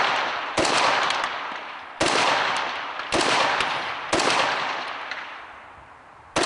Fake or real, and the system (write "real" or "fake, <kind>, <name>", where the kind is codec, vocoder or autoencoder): real